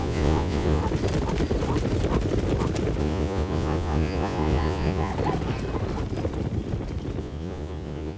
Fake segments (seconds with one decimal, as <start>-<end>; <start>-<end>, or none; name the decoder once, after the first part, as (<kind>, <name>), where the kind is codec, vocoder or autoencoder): 0.0-0.8 (vocoder, Vocos); 3.0-5.1; 7.2-8.2